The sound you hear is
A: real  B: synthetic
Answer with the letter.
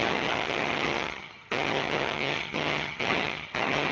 B